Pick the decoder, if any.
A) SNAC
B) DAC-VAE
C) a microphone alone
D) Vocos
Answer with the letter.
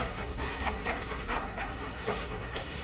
A